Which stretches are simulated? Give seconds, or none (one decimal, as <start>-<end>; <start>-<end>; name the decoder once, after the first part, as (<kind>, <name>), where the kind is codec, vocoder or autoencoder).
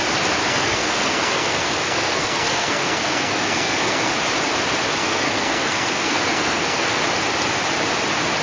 0.4-4.1 (codec, SNAC); 5.0-7.0